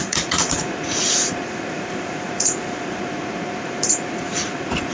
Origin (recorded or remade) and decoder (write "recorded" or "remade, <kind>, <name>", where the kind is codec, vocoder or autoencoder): remade, vocoder, Vocos